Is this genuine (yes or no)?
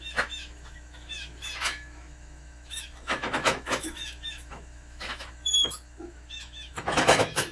no